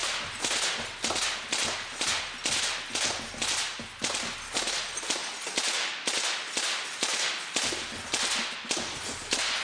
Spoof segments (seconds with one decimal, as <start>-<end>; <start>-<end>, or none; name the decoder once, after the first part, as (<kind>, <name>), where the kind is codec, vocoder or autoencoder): none